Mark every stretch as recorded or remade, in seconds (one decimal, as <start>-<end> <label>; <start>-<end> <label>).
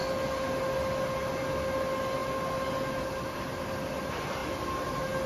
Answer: 0.0-5.3 recorded